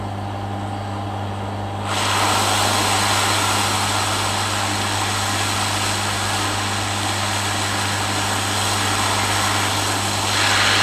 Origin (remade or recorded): recorded